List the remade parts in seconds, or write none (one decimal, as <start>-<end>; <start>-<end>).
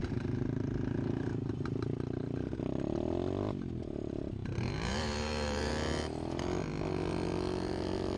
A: 0.0-1.6; 4.4-5.7